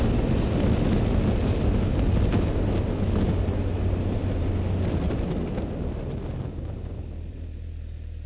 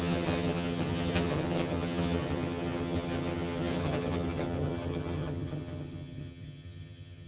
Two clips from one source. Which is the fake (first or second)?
second